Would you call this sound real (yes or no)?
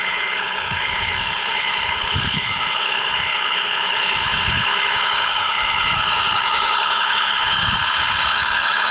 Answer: no